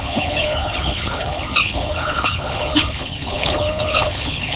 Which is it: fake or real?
fake